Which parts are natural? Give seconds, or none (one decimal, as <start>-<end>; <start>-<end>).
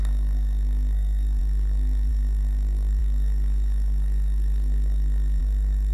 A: none